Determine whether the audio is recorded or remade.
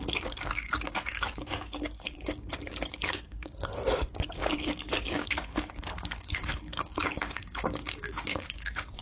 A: remade